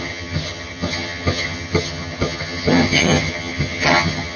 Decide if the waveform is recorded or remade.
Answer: remade